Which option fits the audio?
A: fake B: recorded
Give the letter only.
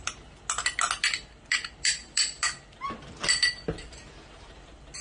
B